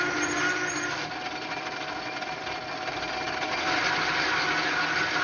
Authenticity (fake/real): real